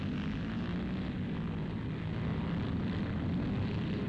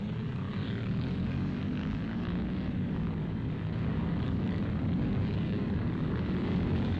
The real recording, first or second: first